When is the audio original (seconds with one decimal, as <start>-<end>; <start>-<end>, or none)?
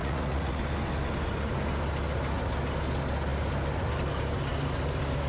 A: 0.6-5.3